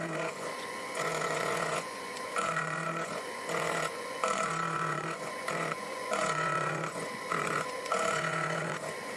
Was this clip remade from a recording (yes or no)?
yes